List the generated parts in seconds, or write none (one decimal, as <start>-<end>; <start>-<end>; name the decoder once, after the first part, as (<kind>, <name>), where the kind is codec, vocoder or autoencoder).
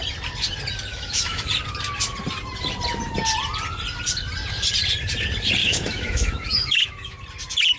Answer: 0.9-1.5 (autoencoder, DAC-VAE); 5.6-7.2